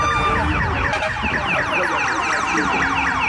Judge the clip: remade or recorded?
recorded